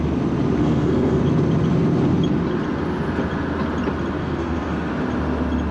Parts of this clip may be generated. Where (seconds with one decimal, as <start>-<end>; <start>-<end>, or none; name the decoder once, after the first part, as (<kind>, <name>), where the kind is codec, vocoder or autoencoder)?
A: 0.6-1.2 (codec, SNAC); 4.2-4.9

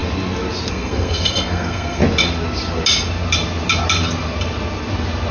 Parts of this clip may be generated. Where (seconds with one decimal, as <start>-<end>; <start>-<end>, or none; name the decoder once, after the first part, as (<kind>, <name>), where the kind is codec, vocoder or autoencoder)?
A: 0.7-2.0 (codec, SNAC)

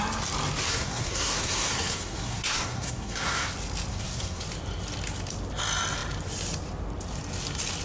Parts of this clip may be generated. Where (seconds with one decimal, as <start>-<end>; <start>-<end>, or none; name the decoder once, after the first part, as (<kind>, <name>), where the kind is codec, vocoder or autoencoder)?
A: 0.7-3.5 (codec, SNAC); 3.9-4.4

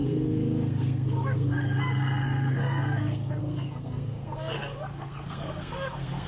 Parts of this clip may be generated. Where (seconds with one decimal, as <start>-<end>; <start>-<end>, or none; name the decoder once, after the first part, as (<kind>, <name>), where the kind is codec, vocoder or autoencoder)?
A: 0.0-6.3 (codec, SNAC)

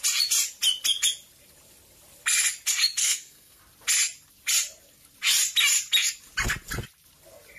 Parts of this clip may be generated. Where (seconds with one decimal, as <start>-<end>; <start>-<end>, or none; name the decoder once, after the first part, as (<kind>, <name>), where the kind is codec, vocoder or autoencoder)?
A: 3.0-3.6 (codec, SNAC)

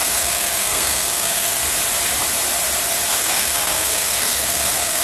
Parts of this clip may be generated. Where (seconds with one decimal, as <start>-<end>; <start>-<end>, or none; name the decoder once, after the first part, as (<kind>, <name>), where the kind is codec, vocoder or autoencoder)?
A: 0.0-1.6 (codec, SNAC); 3.1-5.0